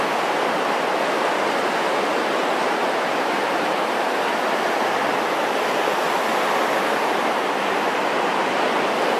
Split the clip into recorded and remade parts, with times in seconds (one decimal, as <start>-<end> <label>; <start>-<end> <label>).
0.0-2.4 recorded; 2.4-3.7 remade; 3.7-9.2 recorded